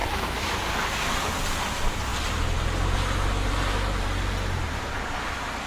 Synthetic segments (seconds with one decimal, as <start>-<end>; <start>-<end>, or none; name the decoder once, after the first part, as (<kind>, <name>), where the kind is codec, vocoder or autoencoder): 0.0-0.6 (autoencoder, DAC-VAE)